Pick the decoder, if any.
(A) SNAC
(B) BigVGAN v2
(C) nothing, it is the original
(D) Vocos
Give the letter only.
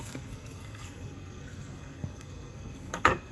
A